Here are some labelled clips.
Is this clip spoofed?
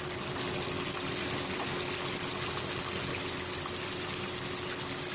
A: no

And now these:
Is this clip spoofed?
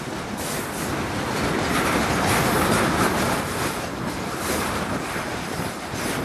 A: no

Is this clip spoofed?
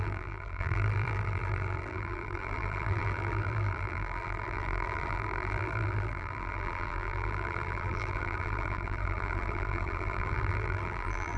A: yes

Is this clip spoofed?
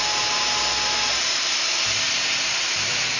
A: no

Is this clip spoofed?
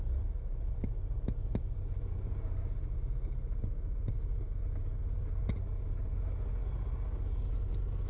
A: no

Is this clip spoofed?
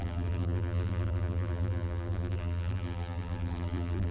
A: yes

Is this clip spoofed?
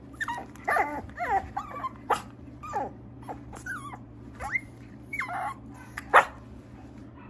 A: yes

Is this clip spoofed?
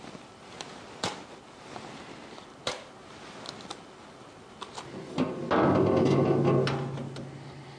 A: no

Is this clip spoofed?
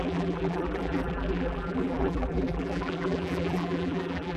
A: yes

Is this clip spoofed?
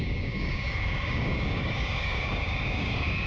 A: yes